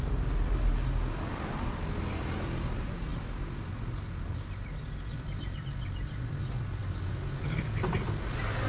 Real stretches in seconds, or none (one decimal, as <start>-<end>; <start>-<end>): 0.0-8.7